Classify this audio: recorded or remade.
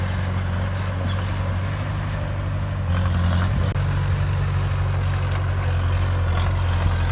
recorded